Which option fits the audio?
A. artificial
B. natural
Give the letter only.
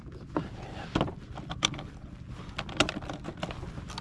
B